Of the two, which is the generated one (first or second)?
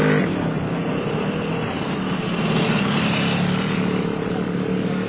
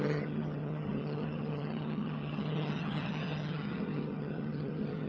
second